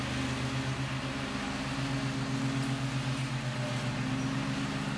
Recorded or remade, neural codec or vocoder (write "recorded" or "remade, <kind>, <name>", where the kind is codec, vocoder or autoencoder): recorded